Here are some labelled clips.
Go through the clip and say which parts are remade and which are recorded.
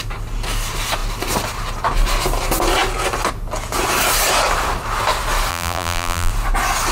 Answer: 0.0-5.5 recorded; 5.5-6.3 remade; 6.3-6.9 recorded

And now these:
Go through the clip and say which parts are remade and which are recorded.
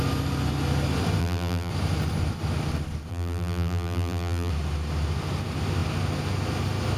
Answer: 0.0-1.2 recorded; 1.2-1.7 remade; 1.7-3.1 recorded; 3.1-4.5 remade; 4.5-7.0 recorded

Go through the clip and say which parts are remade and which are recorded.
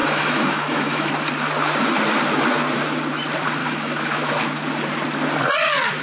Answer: 0.0-1.1 remade; 1.1-3.6 recorded; 3.6-4.3 remade; 4.3-6.0 recorded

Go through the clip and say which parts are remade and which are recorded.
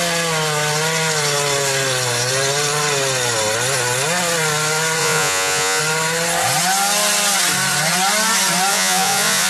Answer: 0.0-5.0 recorded; 5.0-5.8 remade; 5.8-8.7 recorded; 8.7-9.5 remade